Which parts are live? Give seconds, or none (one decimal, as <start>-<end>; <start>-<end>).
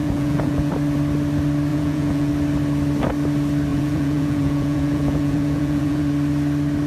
0.7-1.7; 2.3-3.7; 6.0-6.9